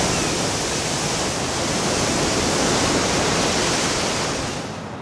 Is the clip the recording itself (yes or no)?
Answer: no